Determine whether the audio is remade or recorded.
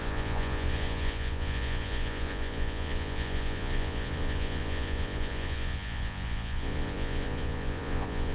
remade